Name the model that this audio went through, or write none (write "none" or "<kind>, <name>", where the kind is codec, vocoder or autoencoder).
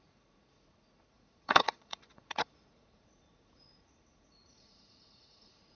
vocoder, Vocos